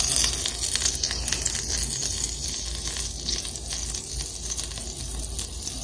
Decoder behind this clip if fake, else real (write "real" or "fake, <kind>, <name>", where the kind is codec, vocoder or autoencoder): real